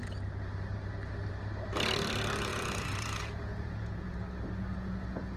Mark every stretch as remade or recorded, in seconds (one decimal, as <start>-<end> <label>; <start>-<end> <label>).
0.0-2.5 recorded; 2.5-4.1 remade; 4.1-4.6 recorded; 4.6-5.4 remade